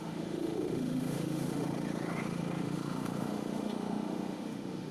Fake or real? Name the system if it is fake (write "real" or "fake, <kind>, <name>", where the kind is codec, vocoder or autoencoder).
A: fake, autoencoder, DAC-VAE